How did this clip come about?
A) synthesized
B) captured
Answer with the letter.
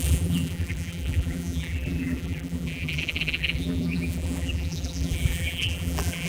A